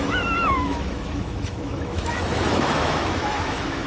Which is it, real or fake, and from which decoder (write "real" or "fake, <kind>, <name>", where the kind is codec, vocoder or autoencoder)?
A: fake, autoencoder, DAC-VAE